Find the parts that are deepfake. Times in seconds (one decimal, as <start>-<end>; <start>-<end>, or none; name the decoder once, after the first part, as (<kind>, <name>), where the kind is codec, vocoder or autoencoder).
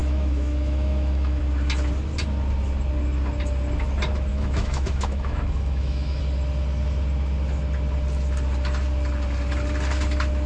0.0-1.4 (autoencoder, DAC-VAE); 4.3-6.2